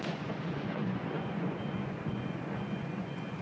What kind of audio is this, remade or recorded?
remade